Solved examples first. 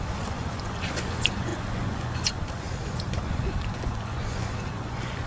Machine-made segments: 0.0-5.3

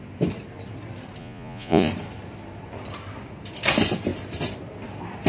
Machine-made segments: 1.2-1.9

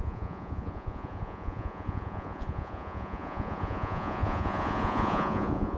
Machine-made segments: 0.0-5.8